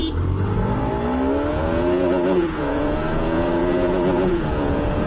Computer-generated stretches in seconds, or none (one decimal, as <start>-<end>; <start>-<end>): 1.5-5.1